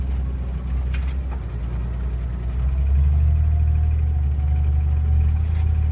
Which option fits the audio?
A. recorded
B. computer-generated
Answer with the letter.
A